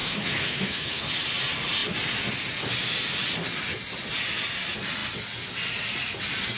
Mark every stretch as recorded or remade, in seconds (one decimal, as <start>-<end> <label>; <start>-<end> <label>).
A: 0.0-1.0 remade; 1.0-6.6 recorded